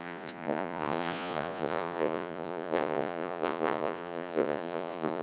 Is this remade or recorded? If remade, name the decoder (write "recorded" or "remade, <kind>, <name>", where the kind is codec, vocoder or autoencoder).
remade, vocoder, Vocos